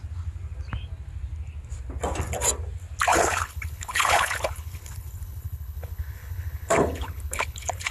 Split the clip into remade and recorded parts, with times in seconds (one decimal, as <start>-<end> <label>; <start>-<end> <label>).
0.0-3.1 recorded; 3.1-7.9 remade